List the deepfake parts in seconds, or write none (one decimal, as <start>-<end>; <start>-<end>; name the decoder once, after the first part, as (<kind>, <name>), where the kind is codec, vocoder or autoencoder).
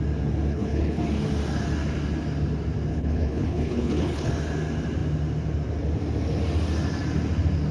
0.5-1.0 (codec, HILCodec); 2.9-4.3